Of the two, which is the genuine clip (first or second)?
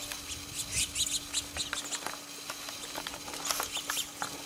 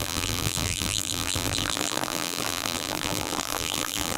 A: first